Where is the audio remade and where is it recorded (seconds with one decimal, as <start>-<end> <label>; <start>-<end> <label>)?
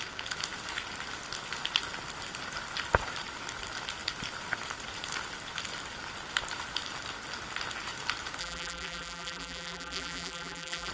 0.0-8.4 recorded; 8.4-10.9 remade